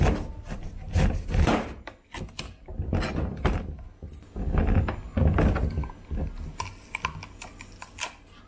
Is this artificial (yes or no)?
no